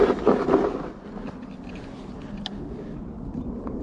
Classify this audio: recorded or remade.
recorded